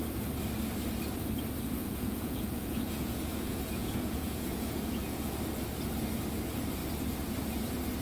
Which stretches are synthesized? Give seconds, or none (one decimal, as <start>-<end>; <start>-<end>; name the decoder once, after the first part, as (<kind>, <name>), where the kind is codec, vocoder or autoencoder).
1.8-5.3 (vocoder, Vocos)